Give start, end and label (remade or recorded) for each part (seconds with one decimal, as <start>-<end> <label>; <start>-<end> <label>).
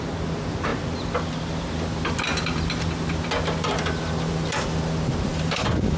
0.0-5.3 recorded; 5.3-6.0 remade